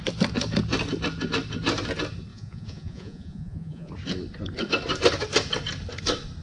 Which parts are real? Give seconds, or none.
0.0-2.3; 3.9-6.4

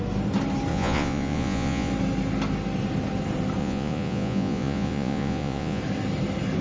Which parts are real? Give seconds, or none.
0.0-0.7; 1.9-3.6; 5.8-6.6

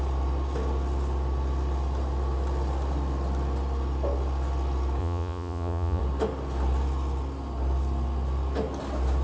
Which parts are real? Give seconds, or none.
0.0-5.0; 6.0-9.2

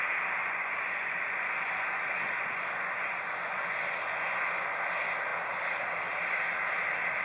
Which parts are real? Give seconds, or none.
0.0-0.4; 4.7-7.2

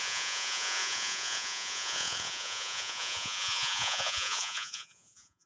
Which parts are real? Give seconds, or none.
none